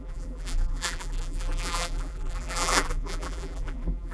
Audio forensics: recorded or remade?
remade